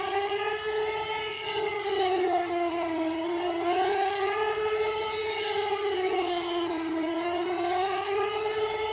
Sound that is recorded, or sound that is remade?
remade